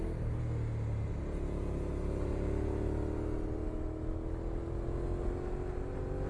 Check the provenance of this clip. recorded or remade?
recorded